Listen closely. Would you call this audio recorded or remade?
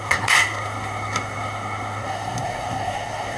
remade